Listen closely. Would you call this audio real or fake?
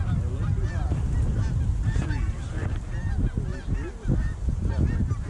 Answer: real